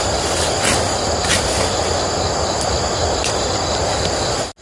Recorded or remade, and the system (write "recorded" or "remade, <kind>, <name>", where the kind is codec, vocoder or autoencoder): recorded